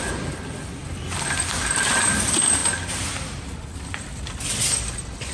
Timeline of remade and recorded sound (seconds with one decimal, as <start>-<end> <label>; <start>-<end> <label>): 0.0-2.6 remade; 2.6-3.4 recorded; 3.4-5.3 remade